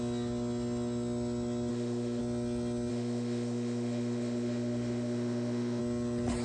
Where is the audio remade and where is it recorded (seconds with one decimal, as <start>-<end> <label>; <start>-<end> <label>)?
0.0-1.7 recorded; 1.7-2.2 remade; 2.2-2.9 recorded; 2.9-5.8 remade; 5.8-6.4 recorded